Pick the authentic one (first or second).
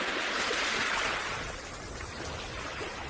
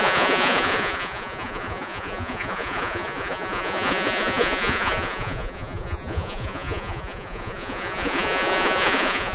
first